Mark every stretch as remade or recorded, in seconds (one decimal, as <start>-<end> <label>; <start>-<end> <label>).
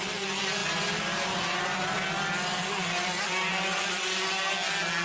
0.0-5.0 recorded